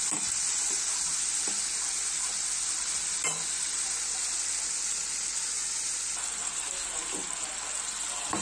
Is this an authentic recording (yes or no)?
yes